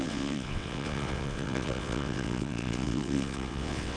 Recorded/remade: remade